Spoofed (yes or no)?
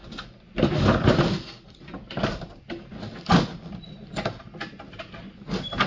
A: no